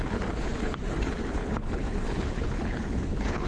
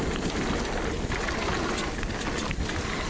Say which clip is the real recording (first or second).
second